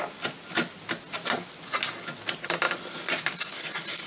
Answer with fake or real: real